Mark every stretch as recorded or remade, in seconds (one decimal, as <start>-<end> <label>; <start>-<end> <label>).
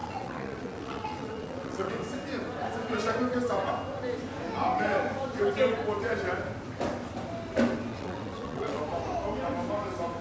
0.0-1.9 remade; 1.9-7.9 recorded; 7.9-8.8 remade; 8.8-10.2 recorded